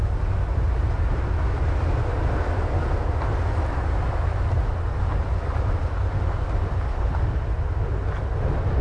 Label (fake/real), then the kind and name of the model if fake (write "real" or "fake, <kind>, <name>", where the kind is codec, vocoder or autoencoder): real